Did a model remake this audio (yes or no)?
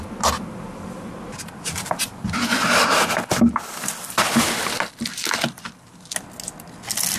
no